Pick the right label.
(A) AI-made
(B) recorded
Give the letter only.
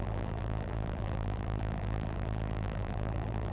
A